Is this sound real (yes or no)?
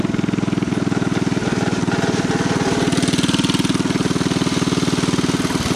yes